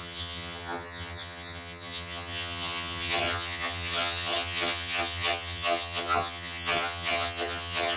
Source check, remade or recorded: remade